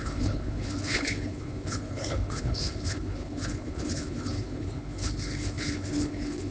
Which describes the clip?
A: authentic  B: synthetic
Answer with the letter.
B